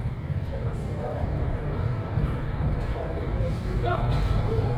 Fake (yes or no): yes